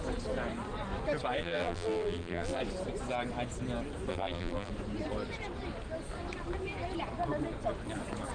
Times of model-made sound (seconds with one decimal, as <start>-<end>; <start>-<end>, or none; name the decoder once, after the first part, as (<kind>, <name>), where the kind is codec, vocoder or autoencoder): 1.4-2.6 (vocoder, BigVGAN v2); 4.1-4.7